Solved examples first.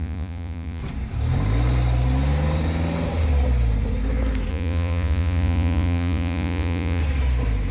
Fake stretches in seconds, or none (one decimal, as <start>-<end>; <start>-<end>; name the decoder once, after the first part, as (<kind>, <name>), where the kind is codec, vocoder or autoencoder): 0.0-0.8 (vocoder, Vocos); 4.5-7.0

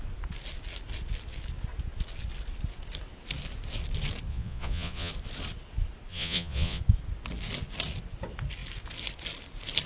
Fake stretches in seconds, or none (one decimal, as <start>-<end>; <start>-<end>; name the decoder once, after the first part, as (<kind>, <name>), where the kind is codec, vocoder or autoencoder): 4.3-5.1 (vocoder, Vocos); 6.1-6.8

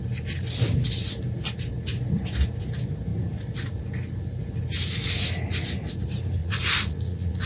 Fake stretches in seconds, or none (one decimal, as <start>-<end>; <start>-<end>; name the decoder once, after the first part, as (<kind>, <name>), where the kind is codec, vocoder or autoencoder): 6.4-7.5 (vocoder, Vocos)

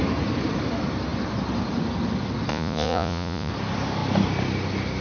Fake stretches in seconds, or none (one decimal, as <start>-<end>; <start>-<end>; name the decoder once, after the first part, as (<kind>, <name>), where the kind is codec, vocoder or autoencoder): 2.5-3.5 (vocoder, Vocos)

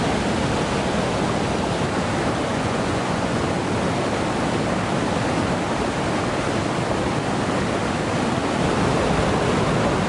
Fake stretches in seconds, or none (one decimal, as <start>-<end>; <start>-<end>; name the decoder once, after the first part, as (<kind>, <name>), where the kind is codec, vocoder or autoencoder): 2.5-3.4 (vocoder, Vocos)

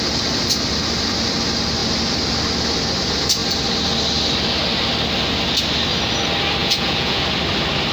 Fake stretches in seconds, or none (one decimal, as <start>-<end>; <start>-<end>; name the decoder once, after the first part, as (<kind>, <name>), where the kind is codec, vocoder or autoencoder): 6.6-7.2 (vocoder, Vocos)